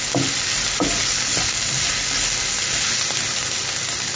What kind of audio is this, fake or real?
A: real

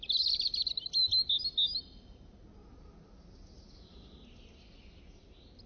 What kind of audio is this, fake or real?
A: real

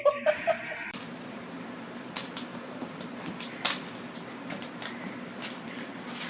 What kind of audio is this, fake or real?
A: fake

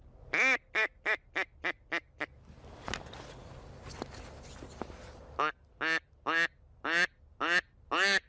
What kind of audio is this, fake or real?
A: real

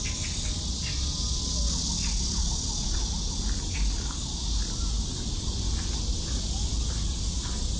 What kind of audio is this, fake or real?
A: real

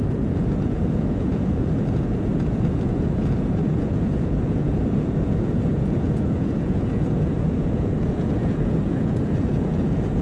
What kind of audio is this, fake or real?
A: fake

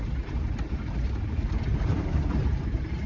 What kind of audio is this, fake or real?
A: fake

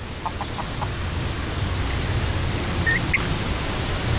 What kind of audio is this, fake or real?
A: real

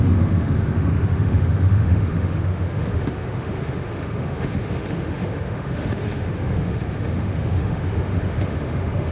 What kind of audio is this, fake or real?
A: fake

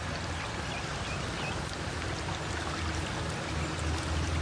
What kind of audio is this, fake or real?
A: real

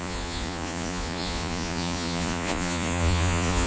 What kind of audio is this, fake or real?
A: fake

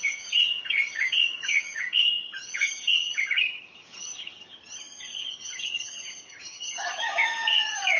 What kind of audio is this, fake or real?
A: fake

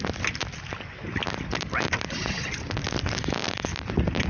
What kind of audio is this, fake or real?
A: real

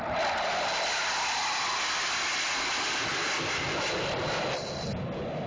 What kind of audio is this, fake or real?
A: real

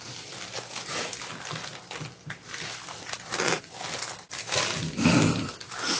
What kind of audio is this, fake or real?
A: real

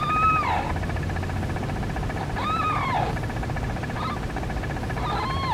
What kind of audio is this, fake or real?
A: real